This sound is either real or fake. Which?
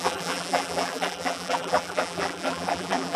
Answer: fake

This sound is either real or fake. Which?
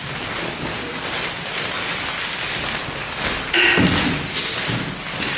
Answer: real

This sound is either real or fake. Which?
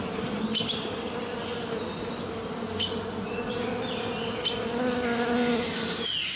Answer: real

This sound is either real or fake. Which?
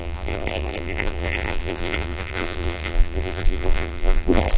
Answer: fake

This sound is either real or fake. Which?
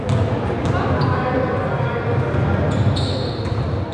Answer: real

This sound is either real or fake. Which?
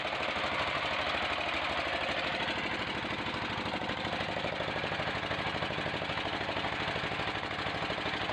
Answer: real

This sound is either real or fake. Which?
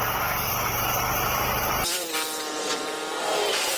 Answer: fake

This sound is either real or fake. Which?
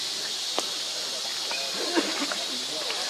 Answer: real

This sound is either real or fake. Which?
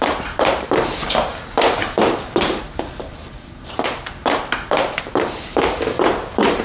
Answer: fake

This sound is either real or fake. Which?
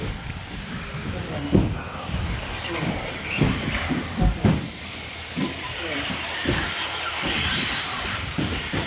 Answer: fake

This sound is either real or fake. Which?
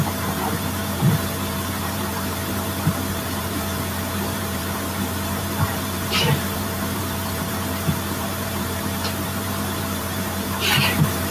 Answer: fake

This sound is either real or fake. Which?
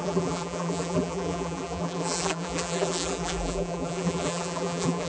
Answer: fake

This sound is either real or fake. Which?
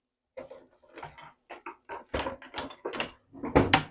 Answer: real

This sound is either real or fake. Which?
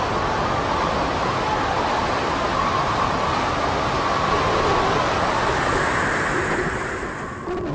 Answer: real